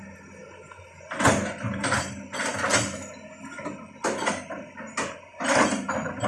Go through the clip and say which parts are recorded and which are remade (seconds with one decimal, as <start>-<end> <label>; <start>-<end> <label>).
0.0-6.3 recorded